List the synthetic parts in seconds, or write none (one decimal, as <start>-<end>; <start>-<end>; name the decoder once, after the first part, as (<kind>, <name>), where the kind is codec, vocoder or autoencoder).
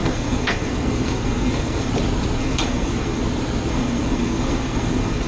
0.0-1.9 (codec, SNAC); 2.4-3.2; 3.7-5.3